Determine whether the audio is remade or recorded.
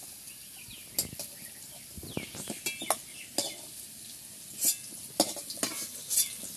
recorded